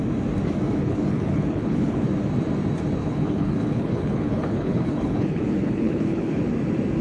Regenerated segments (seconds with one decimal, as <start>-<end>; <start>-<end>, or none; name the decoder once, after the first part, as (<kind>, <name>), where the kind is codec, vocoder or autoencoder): 0.8-2.1 (codec, HILCodec); 3.0-6.4